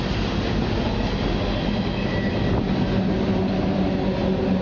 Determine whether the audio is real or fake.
real